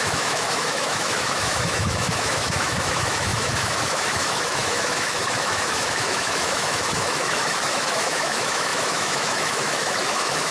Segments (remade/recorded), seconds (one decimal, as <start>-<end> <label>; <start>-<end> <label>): 0.0-10.5 remade